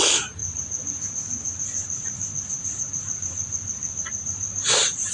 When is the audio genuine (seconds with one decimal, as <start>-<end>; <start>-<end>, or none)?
0.0-0.4; 1.0-1.8